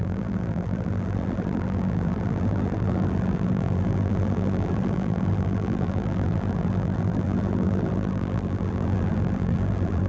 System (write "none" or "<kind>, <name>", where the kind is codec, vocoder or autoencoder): vocoder, BigVGAN v2